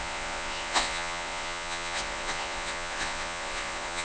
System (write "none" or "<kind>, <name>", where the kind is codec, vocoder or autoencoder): vocoder, Vocos